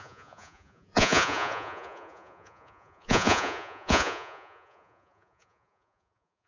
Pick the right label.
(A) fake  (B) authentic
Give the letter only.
A